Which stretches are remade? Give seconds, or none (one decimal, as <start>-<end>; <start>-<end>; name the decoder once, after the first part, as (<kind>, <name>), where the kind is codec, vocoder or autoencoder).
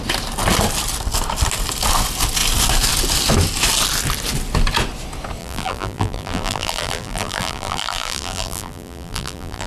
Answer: 5.4-9.7 (vocoder, BigVGAN v2)